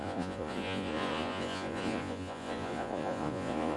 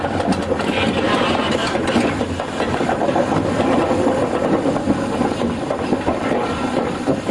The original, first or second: second